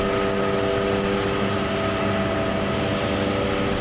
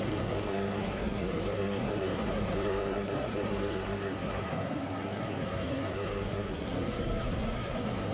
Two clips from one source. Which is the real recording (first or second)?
first